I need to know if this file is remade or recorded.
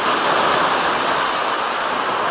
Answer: recorded